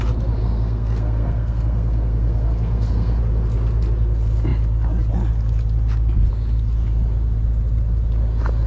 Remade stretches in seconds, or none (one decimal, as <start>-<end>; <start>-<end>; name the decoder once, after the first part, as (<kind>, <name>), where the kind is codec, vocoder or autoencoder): 0.4-3.2 (codec, SNAC)